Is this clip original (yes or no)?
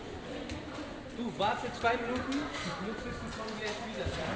yes